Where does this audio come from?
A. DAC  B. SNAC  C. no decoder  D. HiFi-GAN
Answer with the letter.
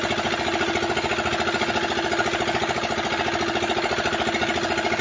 C